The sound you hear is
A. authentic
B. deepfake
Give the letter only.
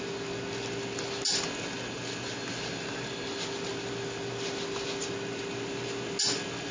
A